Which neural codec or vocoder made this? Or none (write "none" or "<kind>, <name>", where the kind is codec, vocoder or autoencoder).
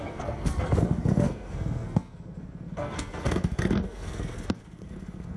codec, SNAC